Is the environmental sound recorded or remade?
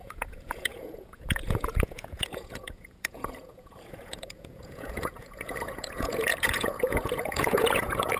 remade